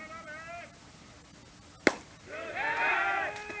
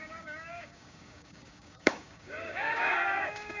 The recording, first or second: first